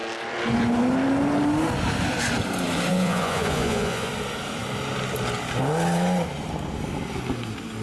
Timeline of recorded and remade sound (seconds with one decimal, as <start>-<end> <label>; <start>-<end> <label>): 0.0-2.9 recorded; 2.9-4.1 remade; 4.1-7.8 recorded